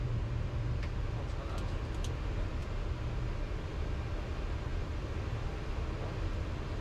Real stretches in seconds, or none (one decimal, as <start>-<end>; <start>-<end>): 0.0-6.8